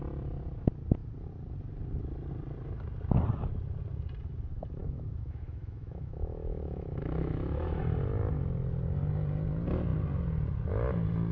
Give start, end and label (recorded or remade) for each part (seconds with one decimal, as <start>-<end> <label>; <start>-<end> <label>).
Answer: 0.0-4.8 recorded; 4.8-7.8 remade; 7.8-11.3 recorded